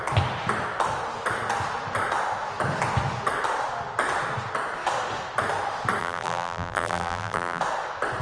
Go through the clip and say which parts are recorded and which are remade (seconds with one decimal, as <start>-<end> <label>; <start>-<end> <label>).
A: 0.0-6.0 recorded; 6.0-7.6 remade; 7.6-8.2 recorded